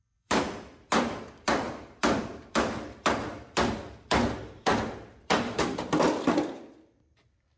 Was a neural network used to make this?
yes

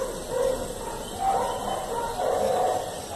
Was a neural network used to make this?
no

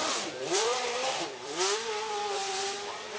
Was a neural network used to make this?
yes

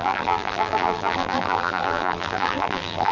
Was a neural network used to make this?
yes